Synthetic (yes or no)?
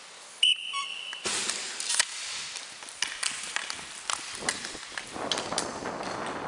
no